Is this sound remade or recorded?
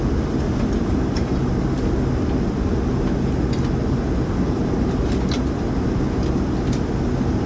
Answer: recorded